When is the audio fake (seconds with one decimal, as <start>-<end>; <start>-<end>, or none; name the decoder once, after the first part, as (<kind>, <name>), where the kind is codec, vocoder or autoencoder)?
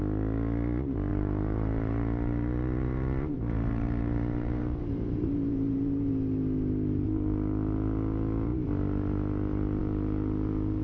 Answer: 1.1-6.1 (vocoder, BigVGAN v2)